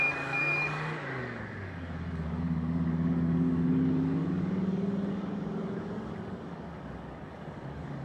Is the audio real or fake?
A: fake